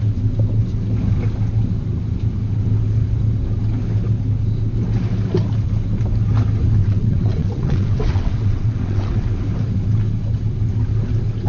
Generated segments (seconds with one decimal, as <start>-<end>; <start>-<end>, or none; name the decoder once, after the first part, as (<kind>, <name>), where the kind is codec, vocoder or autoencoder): 6.8-9.4 (vocoder, WaveNeXt)